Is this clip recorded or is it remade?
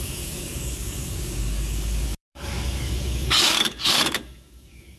remade